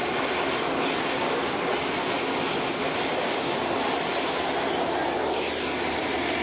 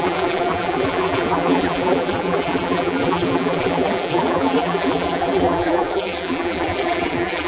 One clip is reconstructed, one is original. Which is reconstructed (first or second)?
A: second